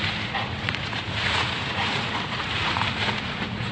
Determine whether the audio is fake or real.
fake